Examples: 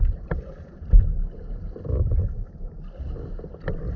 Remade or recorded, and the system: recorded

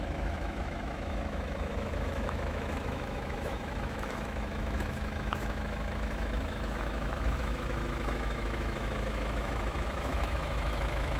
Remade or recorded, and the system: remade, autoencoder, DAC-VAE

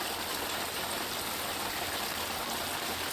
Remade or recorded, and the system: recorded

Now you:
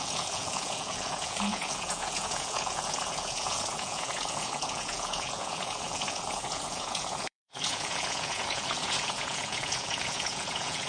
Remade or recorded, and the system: remade, vocoder, Vocos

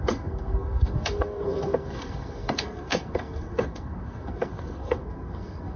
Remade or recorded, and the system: remade, codec, SNAC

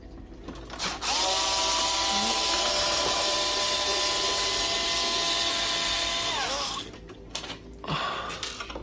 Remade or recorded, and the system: recorded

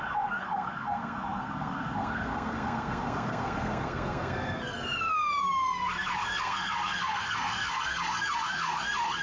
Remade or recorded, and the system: remade, codec, SNAC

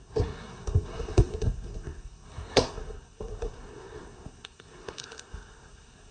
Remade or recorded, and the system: remade, codec, SNAC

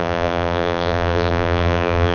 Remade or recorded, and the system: remade, vocoder, BigVGAN v2